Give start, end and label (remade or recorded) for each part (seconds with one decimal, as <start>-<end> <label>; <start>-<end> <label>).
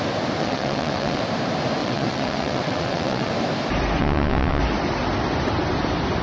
0.0-0.4 recorded; 0.4-1.2 remade; 1.2-1.8 recorded; 1.8-3.3 remade; 3.3-4.0 recorded; 4.0-4.6 remade; 4.6-6.2 recorded